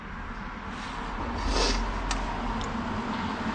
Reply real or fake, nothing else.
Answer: real